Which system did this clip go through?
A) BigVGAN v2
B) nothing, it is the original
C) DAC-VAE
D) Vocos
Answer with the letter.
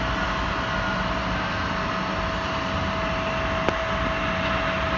B